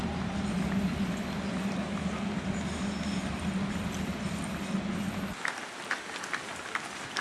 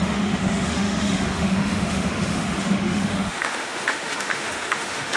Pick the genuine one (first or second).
first